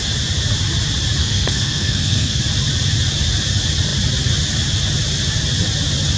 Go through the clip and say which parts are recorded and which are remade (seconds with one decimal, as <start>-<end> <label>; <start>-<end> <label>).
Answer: 0.0-1.2 recorded; 1.2-2.4 remade; 2.4-6.2 recorded